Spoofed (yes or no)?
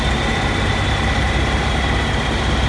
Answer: no